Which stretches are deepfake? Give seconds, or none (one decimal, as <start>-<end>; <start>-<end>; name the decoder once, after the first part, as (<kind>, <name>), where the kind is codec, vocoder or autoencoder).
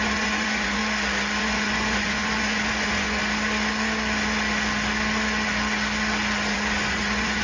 0.0-0.8 (vocoder, Vocos); 1.4-3.2; 6.5-7.4